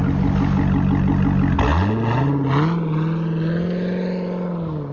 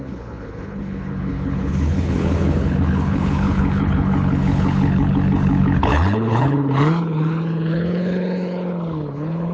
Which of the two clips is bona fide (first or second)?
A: first